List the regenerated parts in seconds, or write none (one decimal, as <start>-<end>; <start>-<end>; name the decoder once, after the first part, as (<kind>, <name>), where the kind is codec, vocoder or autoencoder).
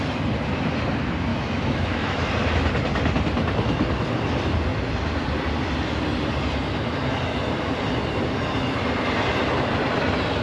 1.3-2.3 (autoencoder, DAC-VAE)